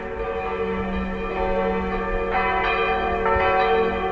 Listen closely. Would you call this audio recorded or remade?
recorded